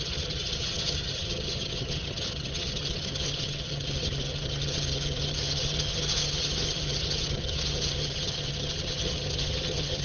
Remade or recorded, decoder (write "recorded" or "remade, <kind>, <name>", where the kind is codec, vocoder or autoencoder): remade, vocoder, HiFi-GAN